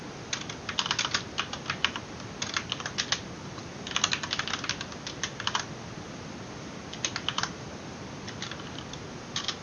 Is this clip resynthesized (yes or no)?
no